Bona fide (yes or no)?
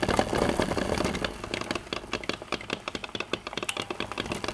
yes